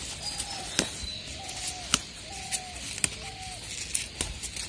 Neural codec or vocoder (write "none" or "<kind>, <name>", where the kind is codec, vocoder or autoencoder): none